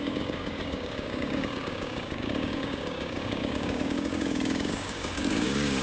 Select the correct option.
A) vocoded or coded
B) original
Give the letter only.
A